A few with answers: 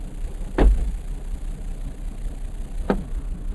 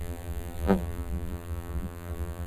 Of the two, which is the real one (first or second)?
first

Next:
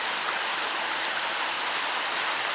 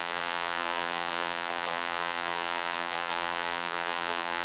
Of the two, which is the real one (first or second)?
first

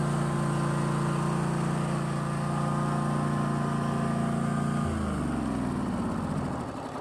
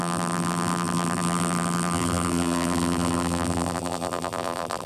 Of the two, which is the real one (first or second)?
first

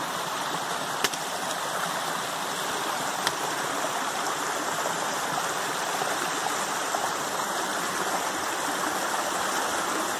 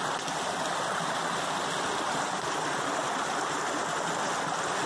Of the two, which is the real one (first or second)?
second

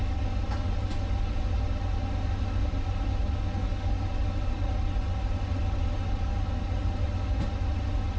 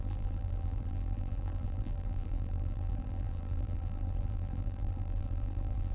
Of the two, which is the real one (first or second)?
first